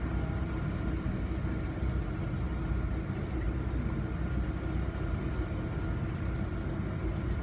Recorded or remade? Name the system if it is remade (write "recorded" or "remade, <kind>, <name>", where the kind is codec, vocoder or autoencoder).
recorded